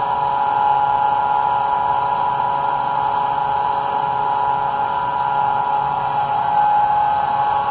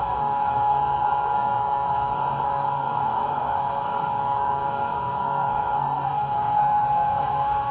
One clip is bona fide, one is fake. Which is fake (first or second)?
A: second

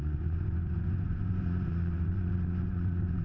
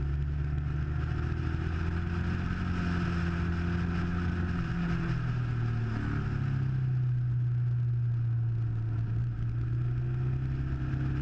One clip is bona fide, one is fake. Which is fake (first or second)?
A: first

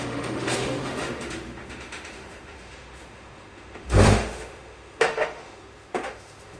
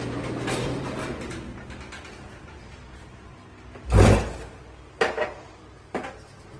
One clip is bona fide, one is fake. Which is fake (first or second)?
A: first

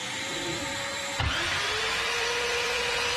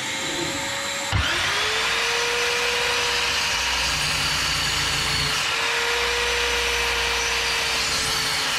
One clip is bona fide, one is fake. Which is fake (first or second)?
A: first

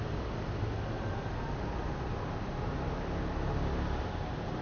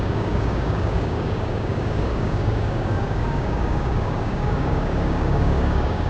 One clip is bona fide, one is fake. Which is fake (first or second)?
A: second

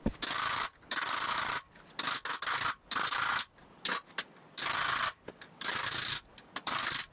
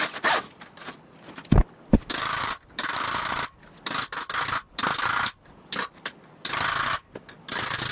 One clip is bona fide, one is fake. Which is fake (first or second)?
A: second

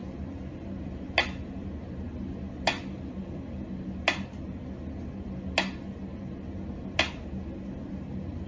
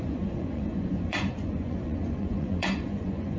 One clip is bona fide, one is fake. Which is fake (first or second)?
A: second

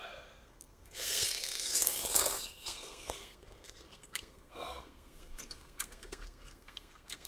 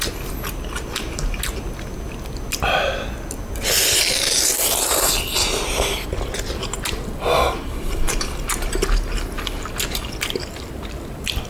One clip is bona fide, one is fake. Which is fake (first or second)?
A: first